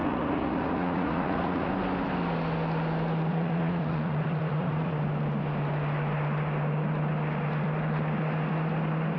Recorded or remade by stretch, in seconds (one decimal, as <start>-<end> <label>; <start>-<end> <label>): 0.0-1.7 remade; 1.7-3.3 recorded; 3.3-5.0 remade; 5.0-9.2 recorded